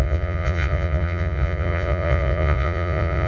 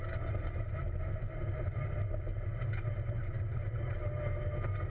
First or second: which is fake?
first